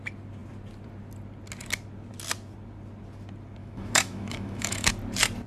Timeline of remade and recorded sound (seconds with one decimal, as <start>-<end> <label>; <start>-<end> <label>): 0.0-3.6 recorded; 3.6-4.9 remade; 4.9-5.5 recorded